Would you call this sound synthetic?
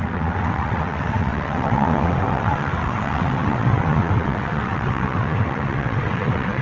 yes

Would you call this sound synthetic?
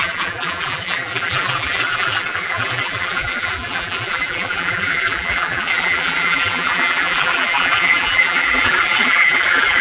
yes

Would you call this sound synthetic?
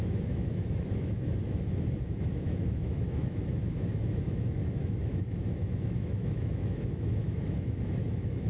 yes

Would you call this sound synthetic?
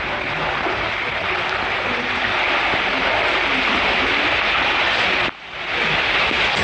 no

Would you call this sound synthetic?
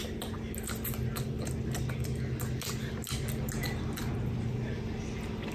no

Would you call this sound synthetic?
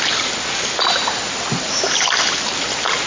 no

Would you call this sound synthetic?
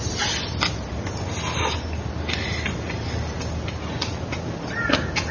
no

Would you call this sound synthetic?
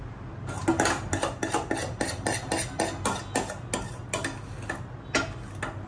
no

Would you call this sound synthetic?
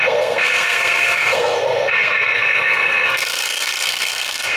yes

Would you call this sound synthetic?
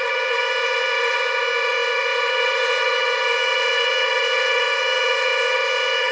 yes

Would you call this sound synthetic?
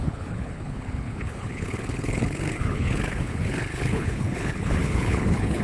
yes